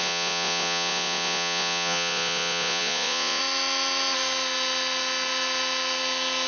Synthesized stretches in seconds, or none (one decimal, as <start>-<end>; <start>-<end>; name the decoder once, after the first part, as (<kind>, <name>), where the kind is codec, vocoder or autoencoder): 0.0-3.4 (vocoder, Vocos)